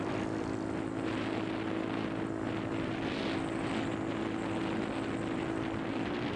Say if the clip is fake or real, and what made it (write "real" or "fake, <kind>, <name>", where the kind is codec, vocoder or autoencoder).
real